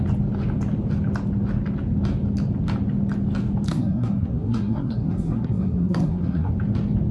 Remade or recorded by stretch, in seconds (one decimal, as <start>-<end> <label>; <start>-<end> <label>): 0.0-3.7 recorded; 3.7-6.5 remade; 6.5-7.1 recorded